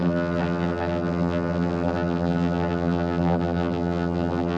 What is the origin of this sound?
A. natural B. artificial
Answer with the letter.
B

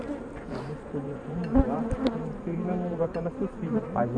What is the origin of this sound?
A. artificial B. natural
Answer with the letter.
A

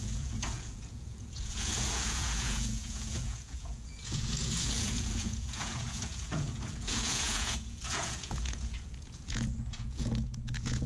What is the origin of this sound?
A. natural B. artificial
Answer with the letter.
B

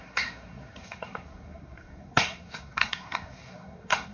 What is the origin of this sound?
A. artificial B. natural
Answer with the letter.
A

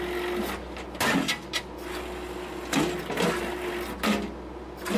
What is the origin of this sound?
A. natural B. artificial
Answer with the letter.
A